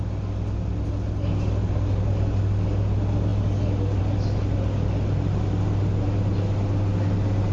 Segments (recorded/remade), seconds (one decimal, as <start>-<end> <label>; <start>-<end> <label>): 0.0-7.5 recorded